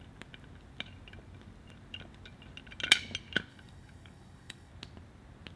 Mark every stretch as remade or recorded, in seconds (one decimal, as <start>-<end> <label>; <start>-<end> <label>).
0.0-3.5 recorded; 3.5-4.7 remade; 4.7-5.6 recorded